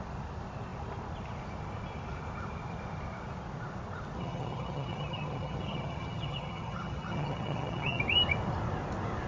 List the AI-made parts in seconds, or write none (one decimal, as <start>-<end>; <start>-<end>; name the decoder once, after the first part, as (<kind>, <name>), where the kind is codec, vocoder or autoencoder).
4.2-8.0 (vocoder, HiFi-GAN)

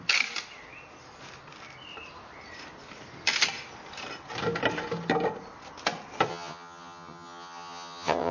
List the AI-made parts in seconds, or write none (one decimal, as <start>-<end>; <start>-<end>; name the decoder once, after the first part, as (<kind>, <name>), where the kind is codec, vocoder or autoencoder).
6.3-8.3 (vocoder, HiFi-GAN)

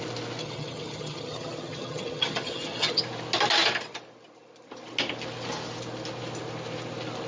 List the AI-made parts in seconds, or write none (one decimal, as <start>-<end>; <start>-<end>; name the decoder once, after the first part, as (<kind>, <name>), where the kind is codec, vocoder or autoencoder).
0.4-3.0 (vocoder, HiFi-GAN)

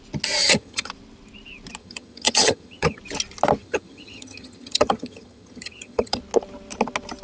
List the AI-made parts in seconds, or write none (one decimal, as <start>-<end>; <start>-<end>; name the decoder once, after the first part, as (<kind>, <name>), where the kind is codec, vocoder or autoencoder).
0.4-0.9 (vocoder, HiFi-GAN); 1.8-3.0; 3.6-6.2

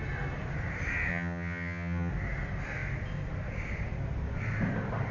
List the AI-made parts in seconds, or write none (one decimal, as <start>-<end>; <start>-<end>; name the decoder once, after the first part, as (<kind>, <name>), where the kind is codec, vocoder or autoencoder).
1.1-2.1 (vocoder, HiFi-GAN)

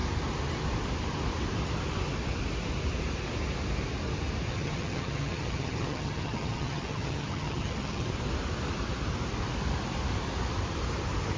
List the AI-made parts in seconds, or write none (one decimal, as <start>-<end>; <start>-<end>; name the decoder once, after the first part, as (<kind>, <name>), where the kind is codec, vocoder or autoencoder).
4.5-8.1 (vocoder, HiFi-GAN)

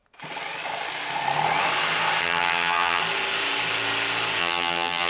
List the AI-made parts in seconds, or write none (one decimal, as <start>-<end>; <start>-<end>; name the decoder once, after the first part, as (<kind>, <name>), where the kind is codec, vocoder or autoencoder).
2.2-3.0 (vocoder, HiFi-GAN); 4.4-5.1

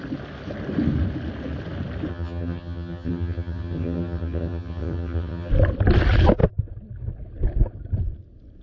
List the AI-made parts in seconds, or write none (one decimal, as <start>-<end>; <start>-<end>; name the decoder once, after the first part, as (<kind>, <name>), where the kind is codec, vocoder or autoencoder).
2.1-5.5 (vocoder, HiFi-GAN)